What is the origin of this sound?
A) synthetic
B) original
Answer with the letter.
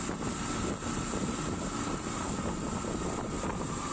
B